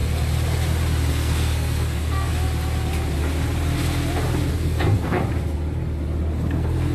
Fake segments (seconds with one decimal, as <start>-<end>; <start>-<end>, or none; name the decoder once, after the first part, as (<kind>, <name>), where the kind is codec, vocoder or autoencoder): 1.1-2.3 (codec, SNAC); 4.5-5.2; 6.3-6.9